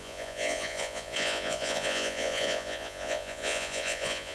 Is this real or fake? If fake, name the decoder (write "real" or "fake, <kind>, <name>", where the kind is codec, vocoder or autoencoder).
fake, vocoder, Vocos